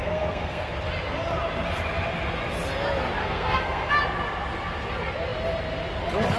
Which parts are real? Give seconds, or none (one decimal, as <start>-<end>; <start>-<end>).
0.7-3.2; 3.9-6.4